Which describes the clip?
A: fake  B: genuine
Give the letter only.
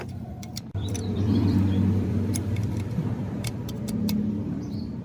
A